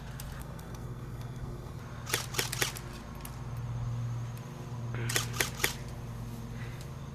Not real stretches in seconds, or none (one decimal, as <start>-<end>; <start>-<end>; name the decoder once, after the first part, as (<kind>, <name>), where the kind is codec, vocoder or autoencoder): 0.4-1.8 (codec, SNAC)